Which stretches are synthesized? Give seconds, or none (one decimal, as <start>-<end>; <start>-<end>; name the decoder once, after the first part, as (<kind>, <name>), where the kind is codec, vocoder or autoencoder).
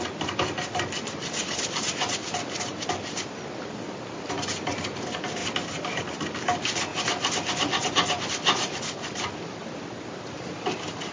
none